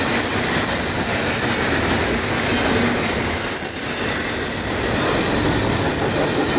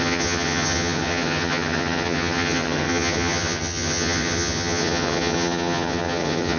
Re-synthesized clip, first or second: second